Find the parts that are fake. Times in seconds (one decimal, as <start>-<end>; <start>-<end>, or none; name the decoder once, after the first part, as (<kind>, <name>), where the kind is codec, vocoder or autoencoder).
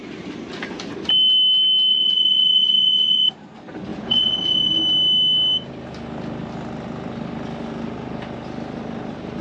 1.9-3.3 (vocoder, Vocos); 3.9-4.8